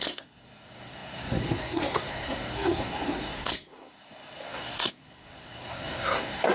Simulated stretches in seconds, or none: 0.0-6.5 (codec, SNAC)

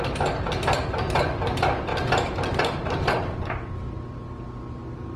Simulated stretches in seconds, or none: none